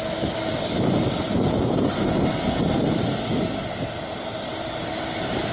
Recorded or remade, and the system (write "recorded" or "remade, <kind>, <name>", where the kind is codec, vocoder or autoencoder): recorded